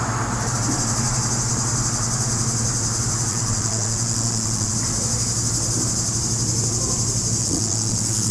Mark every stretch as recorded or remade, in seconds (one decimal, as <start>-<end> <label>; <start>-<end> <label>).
0.0-3.3 recorded; 3.3-4.7 remade; 4.7-7.4 recorded; 7.4-8.3 remade